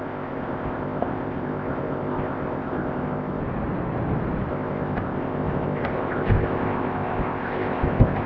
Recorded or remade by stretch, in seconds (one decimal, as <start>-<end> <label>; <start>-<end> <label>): 0.0-3.4 remade; 3.4-4.5 recorded; 4.5-8.3 remade